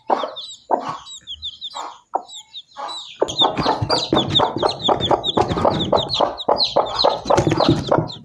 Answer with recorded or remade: recorded